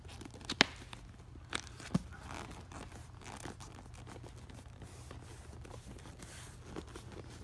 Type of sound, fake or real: real